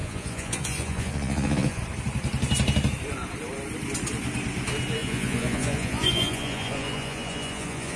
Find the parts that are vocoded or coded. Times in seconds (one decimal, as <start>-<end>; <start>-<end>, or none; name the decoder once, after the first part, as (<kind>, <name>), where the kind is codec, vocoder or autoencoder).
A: 0.0-1.8 (vocoder, Vocos); 5.0-8.0